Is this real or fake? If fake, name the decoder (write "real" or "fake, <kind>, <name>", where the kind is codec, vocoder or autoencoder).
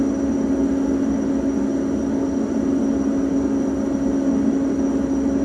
real